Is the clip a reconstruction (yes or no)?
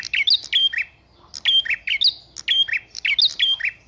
no